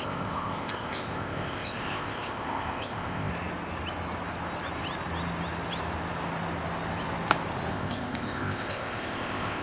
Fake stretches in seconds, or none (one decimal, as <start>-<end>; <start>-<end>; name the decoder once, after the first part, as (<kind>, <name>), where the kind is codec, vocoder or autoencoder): 0.0-3.3 (codec, ZipCodec); 7.7-9.6